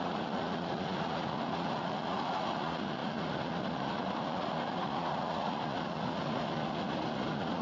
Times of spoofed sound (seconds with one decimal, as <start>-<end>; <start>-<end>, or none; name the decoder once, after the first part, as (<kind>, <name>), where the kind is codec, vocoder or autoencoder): 0.0-7.6 (vocoder, Vocos)